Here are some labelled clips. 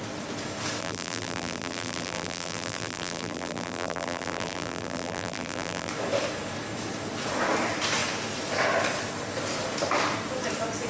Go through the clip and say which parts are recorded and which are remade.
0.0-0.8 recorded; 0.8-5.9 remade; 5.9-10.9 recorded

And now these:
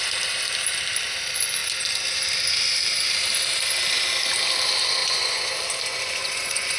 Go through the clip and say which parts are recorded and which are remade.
0.0-5.0 recorded; 5.0-5.5 remade; 5.5-5.9 recorded; 5.9-6.8 remade